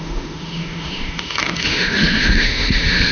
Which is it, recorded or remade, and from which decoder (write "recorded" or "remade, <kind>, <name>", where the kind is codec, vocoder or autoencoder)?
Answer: remade, autoencoder, DAC-VAE